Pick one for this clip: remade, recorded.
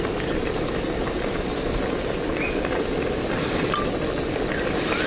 recorded